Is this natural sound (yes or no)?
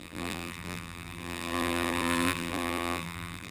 no